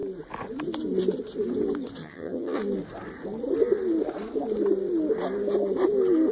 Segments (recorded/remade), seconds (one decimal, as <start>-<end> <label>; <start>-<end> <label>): 0.0-2.0 recorded; 2.0-2.6 remade; 2.6-6.3 recorded